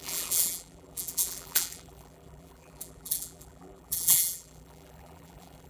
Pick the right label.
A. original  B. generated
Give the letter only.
B